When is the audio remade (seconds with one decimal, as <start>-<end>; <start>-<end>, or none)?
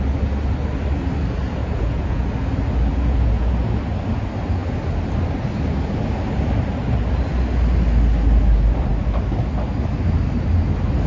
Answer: 1.6-2.3; 2.9-3.5